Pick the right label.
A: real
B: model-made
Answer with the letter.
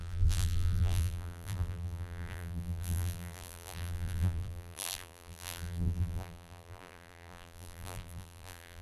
B